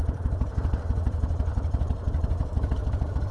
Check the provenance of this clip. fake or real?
fake